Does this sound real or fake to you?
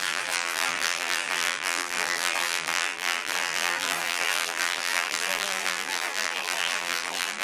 fake